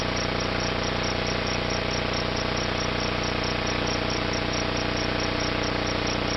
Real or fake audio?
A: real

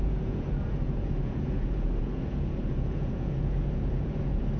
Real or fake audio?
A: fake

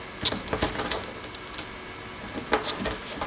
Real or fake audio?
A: real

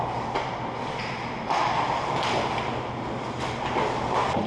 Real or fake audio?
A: real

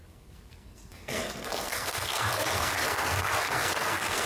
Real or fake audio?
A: fake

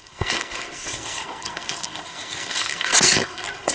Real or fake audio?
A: fake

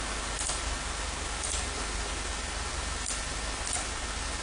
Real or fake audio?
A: real